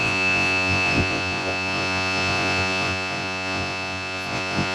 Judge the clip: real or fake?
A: fake